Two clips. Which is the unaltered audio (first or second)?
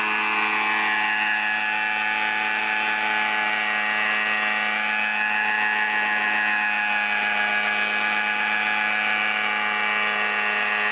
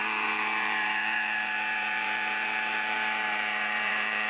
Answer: first